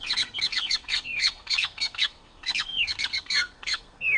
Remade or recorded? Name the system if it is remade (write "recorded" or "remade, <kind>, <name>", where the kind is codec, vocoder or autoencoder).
remade, codec, SNAC